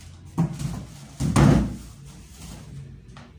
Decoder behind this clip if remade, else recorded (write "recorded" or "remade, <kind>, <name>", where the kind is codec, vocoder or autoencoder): recorded